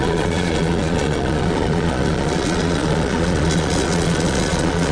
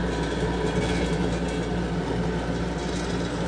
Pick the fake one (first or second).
first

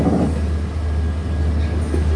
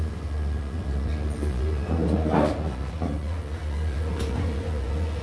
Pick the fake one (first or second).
second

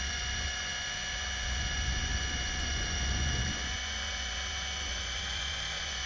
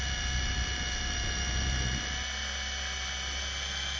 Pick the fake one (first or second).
first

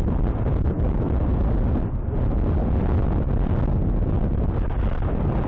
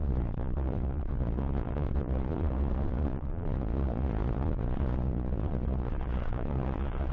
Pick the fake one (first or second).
second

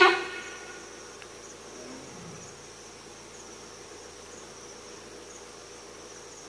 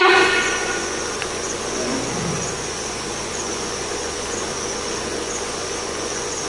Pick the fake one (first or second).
second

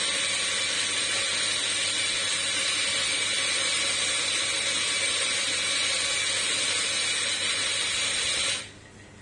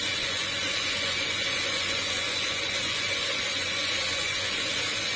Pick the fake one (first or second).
second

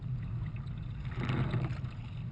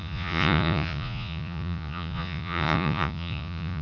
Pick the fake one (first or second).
second